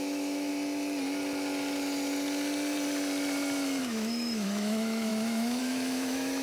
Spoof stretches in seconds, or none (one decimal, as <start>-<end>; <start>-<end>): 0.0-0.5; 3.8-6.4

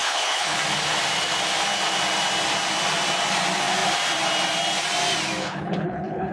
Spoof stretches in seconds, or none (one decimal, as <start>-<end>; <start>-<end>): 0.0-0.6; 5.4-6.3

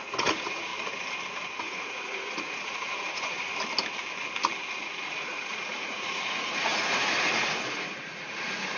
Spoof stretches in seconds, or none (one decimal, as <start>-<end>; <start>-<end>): 0.0-0.7; 1.6-3.5; 4.7-8.8